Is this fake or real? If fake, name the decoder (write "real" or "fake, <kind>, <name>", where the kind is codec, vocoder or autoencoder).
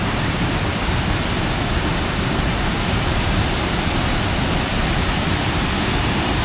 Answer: real